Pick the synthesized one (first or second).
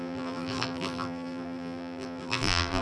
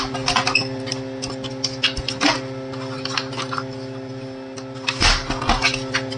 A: first